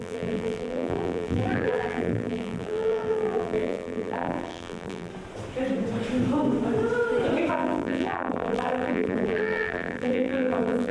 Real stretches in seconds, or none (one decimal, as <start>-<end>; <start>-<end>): 5.1-7.5